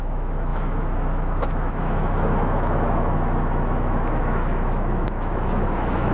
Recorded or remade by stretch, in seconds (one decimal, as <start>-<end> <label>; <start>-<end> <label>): 0.0-6.1 remade